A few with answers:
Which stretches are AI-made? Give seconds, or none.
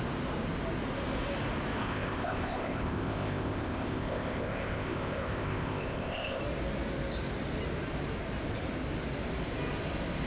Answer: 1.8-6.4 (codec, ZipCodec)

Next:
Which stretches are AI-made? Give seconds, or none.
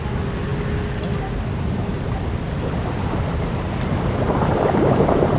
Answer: none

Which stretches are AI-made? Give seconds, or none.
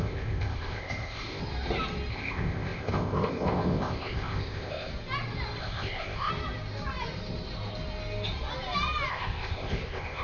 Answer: 0.0-1.4 (codec, ZipCodec); 2.1-4.9; 5.6-6.3; 9.1-10.2